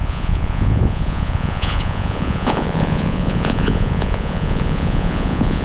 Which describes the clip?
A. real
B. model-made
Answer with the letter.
B